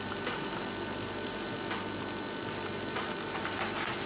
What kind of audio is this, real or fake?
real